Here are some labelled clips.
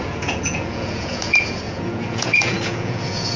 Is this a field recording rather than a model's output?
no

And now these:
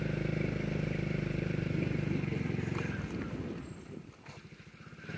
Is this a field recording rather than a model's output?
yes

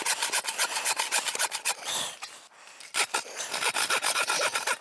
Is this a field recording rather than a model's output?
yes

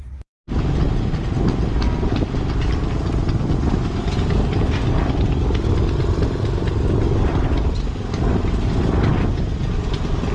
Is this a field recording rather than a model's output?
yes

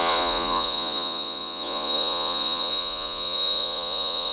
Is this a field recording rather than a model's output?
no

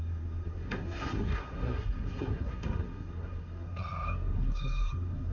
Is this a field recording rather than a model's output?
no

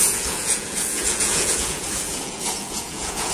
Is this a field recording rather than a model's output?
no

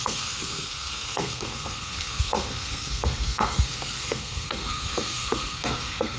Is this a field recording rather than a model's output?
no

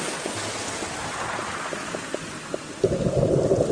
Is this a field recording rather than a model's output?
yes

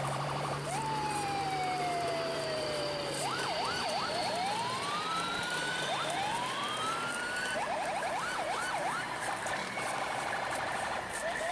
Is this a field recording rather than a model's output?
no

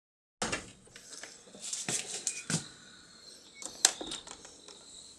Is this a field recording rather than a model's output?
yes